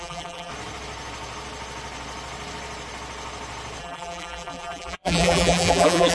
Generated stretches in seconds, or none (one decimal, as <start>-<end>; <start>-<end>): 0.0-0.5; 3.8-6.1